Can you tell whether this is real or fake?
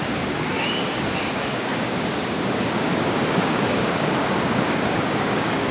fake